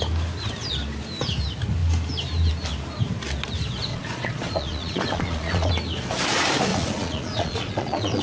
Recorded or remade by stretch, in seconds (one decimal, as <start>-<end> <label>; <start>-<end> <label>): 0.0-3.9 recorded; 3.9-5.7 remade; 5.7-6.7 recorded; 6.7-8.2 remade